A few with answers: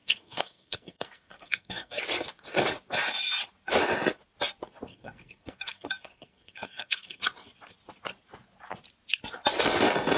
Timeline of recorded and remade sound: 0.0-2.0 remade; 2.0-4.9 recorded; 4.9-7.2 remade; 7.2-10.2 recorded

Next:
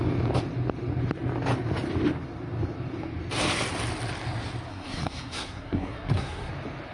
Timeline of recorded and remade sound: 0.0-4.7 recorded; 4.7-6.5 remade; 6.5-6.9 recorded